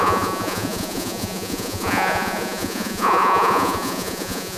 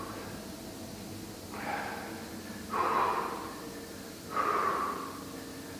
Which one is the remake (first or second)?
first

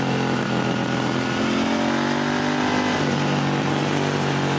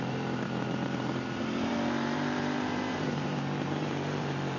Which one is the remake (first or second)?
second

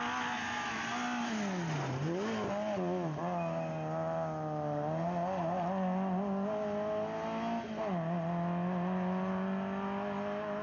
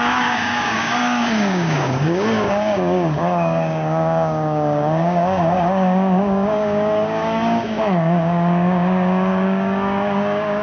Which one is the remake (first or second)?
second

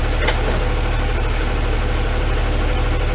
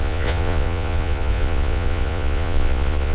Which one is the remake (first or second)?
second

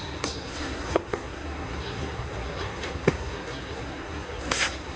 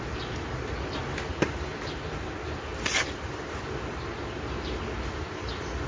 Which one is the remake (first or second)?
first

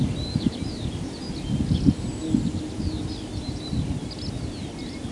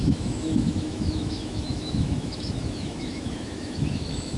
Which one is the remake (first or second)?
second